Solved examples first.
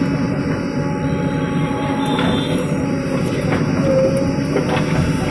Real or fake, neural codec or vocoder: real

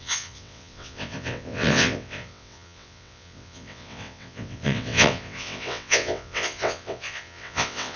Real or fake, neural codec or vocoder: fake, vocoder, WaveNeXt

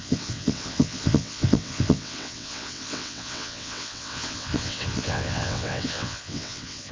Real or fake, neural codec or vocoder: fake, vocoder, WaveNeXt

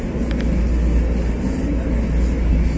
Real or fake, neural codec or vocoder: real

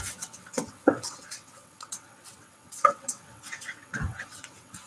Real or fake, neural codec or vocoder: fake, vocoder, WaveNeXt